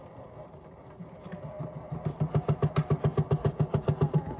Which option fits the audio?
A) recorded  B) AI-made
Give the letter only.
A